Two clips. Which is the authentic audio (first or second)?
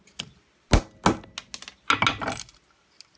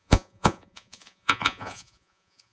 first